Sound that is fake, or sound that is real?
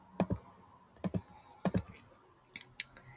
real